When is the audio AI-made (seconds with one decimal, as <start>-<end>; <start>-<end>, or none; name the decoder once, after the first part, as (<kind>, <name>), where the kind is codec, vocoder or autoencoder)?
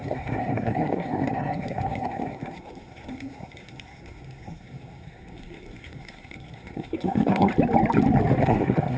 0.0-7.5 (codec, SNAC); 8.4-9.0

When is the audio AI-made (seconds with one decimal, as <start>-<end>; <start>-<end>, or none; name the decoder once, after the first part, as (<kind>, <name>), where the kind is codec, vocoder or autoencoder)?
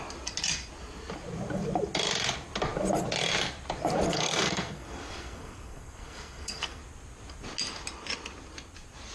4.1-6.8 (codec, SNAC)